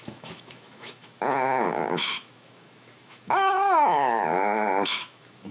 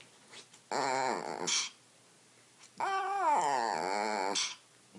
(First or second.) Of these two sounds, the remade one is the first